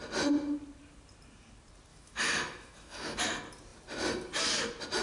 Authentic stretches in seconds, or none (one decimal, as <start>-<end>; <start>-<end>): 0.0-1.9; 3.2-5.0